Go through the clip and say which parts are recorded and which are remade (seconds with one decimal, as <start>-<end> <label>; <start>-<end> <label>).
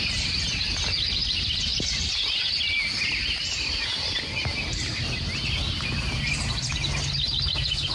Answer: 0.0-7.9 recorded